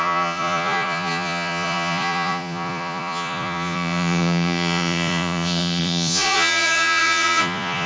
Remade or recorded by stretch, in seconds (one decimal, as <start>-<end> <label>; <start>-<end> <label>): 0.0-7.9 remade